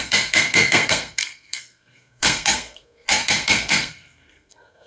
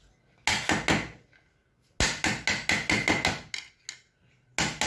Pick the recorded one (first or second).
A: second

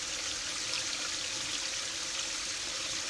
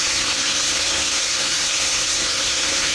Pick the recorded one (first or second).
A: first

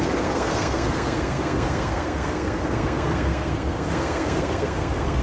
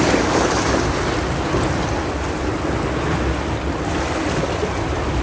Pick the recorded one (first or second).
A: second